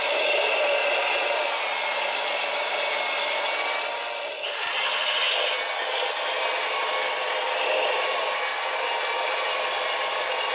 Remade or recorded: recorded